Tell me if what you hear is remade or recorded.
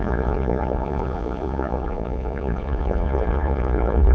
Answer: remade